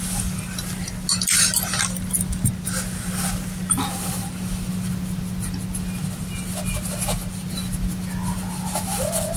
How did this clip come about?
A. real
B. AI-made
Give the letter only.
A